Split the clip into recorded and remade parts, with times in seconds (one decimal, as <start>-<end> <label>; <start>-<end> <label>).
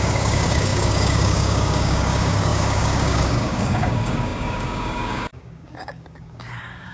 0.0-6.9 remade